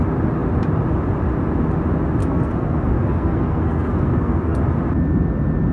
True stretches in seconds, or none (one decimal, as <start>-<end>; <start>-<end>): 0.0-2.2; 4.6-5.7